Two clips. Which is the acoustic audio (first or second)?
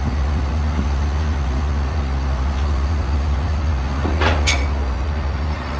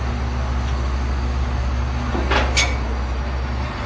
second